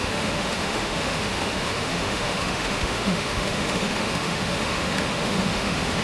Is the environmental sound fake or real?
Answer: fake